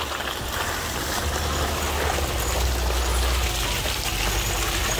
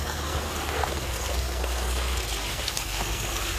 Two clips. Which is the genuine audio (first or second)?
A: first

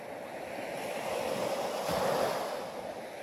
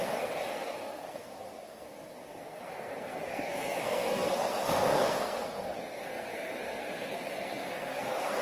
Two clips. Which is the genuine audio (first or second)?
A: first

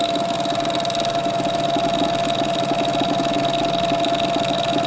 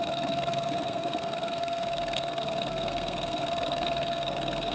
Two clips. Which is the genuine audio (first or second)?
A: first